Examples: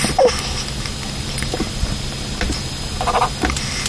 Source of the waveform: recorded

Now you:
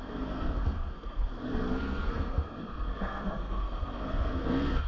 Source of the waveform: remade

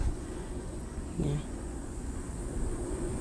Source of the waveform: remade